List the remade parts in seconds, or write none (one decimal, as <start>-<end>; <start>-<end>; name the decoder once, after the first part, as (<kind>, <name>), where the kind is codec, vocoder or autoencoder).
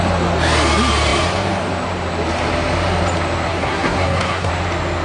3.5-4.5 (codec, SNAC)